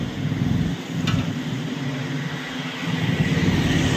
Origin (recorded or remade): recorded